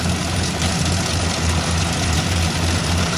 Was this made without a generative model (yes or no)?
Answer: no